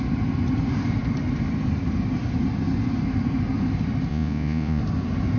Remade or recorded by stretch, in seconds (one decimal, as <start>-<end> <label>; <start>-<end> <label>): 0.0-4.1 recorded; 4.1-4.8 remade; 4.8-5.4 recorded